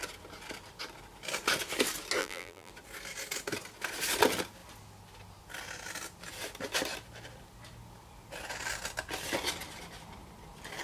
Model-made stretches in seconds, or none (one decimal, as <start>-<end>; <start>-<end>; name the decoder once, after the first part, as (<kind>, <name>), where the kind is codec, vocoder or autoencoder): 2.2-2.7 (vocoder, BigVGAN v2)